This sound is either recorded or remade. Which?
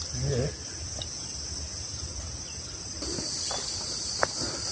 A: recorded